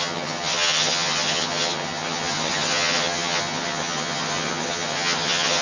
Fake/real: fake